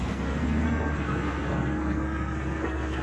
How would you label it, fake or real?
fake